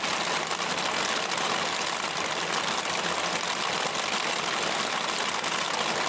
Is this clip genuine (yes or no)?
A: yes